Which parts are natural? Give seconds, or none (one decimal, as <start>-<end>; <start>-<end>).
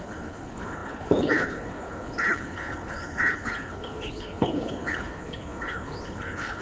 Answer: none